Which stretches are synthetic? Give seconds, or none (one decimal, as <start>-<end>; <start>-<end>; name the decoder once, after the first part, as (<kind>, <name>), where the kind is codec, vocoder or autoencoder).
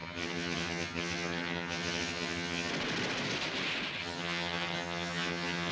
0.0-2.7 (vocoder, HiFi-GAN); 4.0-5.7